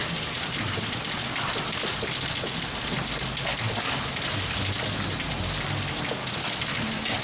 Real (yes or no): yes